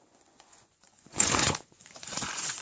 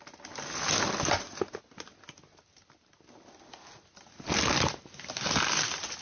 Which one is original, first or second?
second